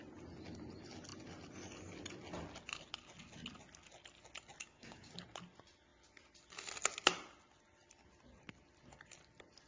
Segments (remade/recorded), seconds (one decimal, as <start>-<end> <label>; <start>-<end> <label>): 0.0-4.6 recorded; 4.6-5.1 remade; 5.1-9.7 recorded